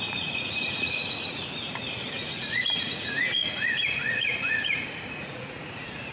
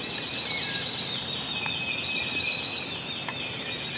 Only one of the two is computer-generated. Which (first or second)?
first